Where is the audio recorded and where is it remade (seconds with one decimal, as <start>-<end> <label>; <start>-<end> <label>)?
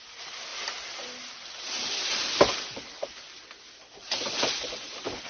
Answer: 0.0-5.3 recorded